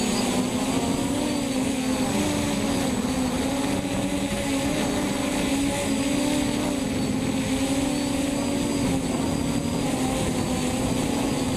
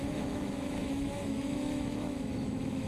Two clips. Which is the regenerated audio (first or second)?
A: second